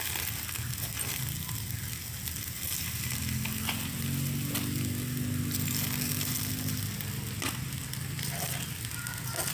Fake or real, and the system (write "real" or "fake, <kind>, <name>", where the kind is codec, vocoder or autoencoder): real